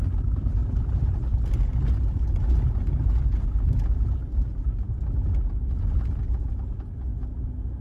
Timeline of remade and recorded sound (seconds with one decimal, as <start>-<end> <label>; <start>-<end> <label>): 0.0-4.3 recorded; 4.3-4.9 remade; 4.9-7.8 recorded